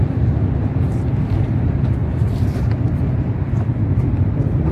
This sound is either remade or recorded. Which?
remade